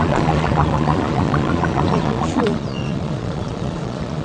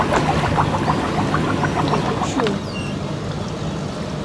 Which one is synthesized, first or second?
first